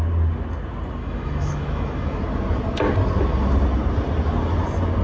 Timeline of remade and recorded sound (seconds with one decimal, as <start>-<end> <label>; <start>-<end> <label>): 0.0-1.0 recorded; 1.0-2.2 remade; 2.2-5.0 recorded